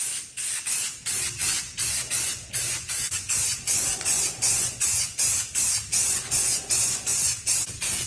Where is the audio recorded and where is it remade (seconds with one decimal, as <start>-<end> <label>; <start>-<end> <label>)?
0.0-1.4 recorded; 1.4-5.3 remade; 5.3-5.9 recorded; 5.9-7.5 remade; 7.5-8.1 recorded